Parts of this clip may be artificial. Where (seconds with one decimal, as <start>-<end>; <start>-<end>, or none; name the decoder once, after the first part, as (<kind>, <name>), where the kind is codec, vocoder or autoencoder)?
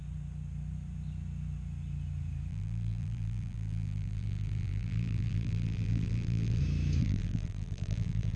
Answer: 2.5-6.6 (vocoder, BigVGAN v2); 7.0-8.4